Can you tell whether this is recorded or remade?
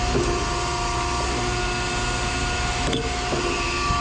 recorded